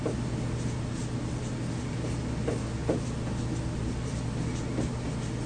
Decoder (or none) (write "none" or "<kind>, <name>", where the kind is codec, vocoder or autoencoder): none